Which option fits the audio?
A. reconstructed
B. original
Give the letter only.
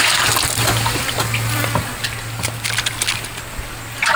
B